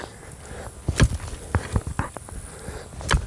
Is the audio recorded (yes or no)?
yes